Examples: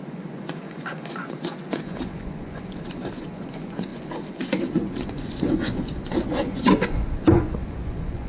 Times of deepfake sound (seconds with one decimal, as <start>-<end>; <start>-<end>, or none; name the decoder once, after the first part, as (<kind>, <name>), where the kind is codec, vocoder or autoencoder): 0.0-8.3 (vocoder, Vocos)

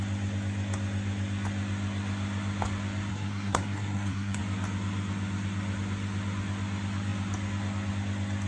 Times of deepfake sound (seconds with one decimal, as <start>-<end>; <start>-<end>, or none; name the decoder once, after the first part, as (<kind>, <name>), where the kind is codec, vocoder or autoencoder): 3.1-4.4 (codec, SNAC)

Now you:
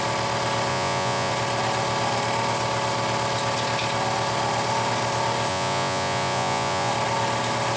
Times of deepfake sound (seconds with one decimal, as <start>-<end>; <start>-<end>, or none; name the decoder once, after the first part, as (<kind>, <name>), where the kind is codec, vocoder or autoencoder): 0.7-1.3 (vocoder, Vocos); 5.5-6.9